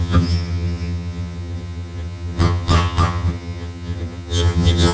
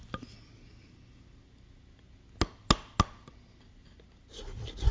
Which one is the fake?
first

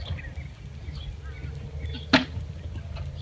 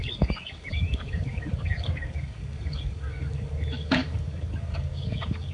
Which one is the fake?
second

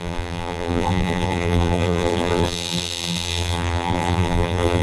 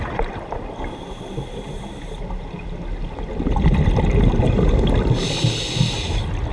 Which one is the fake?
first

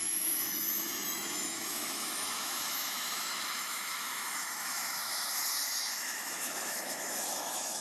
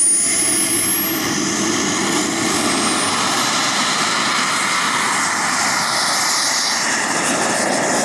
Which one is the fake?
first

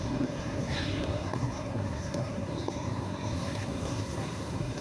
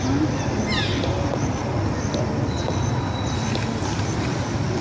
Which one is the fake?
first